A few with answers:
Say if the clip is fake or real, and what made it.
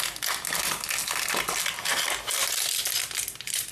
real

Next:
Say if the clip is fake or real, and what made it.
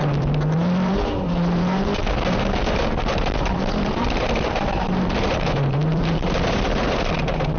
fake, vocoder, BigVGAN v2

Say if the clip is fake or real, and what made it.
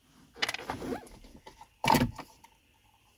fake, vocoder, BigVGAN v2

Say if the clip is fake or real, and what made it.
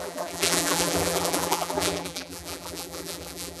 fake, vocoder, BigVGAN v2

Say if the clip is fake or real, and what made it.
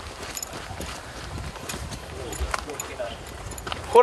fake, vocoder, BigVGAN v2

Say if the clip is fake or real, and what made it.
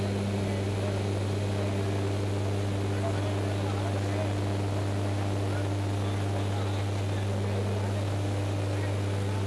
real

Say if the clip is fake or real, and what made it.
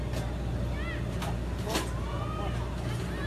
real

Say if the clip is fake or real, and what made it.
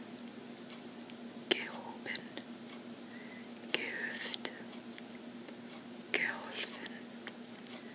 real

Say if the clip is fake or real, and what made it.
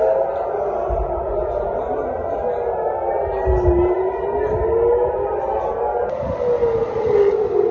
real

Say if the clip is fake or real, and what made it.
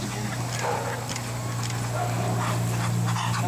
real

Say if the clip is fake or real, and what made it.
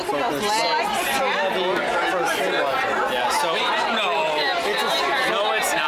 real